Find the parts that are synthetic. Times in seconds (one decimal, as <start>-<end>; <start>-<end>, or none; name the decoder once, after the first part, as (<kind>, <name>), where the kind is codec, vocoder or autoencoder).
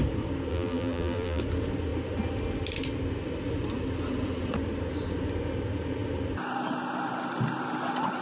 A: 0.5-1.4 (vocoder, BigVGAN v2)